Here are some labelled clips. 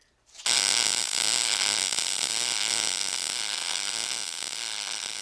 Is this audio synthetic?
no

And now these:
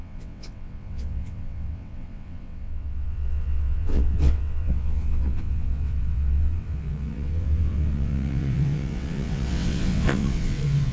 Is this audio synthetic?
yes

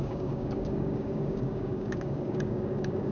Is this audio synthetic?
yes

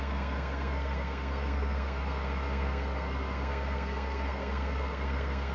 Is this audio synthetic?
yes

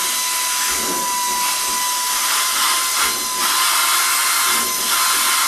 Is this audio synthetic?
no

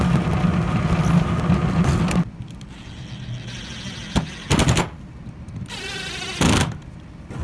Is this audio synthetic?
no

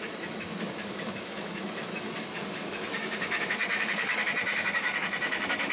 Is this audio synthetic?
yes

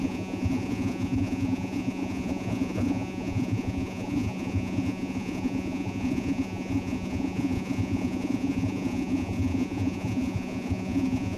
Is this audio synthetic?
yes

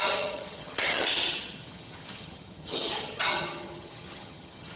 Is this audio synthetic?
yes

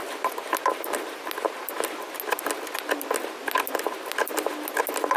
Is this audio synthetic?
no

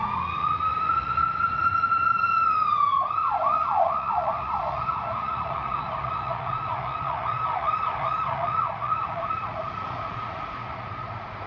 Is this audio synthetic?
yes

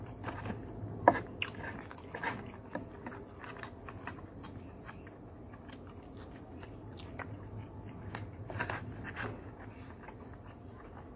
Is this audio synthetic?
no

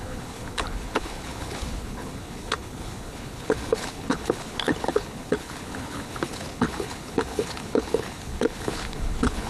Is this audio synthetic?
yes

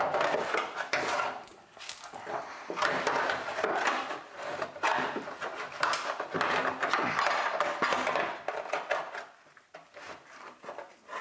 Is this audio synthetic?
yes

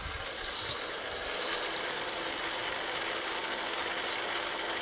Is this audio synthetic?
yes